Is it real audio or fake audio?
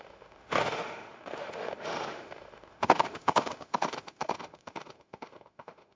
fake